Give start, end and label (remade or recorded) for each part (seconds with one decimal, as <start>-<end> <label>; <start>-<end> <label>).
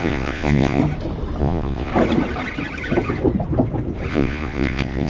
0.0-0.8 remade; 0.8-1.4 recorded; 1.4-1.9 remade; 1.9-4.1 recorded; 4.1-5.1 remade